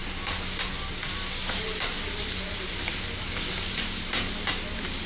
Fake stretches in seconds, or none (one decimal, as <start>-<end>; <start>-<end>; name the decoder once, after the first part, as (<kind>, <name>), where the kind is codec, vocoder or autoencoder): none